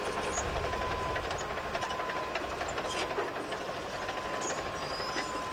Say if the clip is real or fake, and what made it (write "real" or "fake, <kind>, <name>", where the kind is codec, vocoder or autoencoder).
real